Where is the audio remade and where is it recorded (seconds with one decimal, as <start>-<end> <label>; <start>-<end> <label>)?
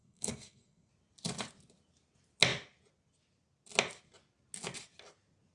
0.0-0.9 remade; 0.9-5.5 recorded